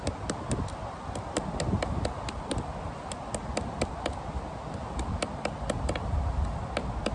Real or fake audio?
real